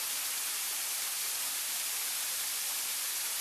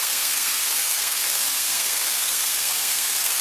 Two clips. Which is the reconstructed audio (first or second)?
second